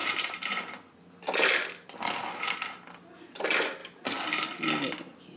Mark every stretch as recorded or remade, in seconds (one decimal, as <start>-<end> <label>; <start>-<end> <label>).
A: 0.0-1.0 remade; 1.0-3.8 recorded; 3.8-4.3 remade; 4.3-5.4 recorded